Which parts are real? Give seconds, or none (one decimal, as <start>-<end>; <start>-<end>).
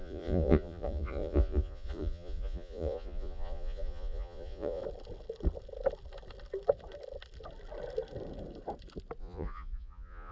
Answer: 4.8-9.2